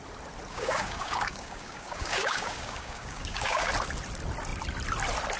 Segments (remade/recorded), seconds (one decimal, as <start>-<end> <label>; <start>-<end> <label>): 0.0-0.5 recorded; 0.5-3.7 remade; 3.7-5.4 recorded